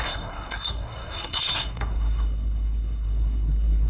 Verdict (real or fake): fake